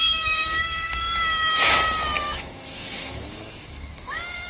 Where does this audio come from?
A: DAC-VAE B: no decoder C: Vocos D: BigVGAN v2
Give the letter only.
A